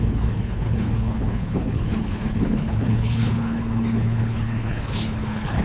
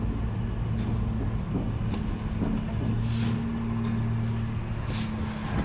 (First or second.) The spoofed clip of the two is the first